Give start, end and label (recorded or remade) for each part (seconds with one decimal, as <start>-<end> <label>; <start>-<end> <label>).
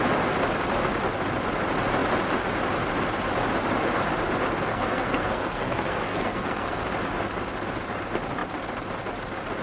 0.0-4.7 recorded; 4.7-6.8 remade; 6.8-9.6 recorded